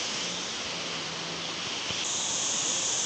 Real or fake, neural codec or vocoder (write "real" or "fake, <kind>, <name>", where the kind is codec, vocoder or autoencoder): real